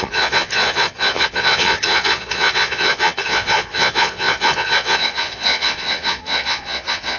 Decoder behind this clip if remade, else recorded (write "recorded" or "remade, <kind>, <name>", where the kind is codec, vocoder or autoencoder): remade, vocoder, Vocos